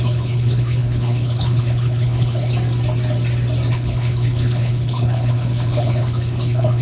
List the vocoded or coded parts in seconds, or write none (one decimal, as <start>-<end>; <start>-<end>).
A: 0.0-2.5; 3.7-6.8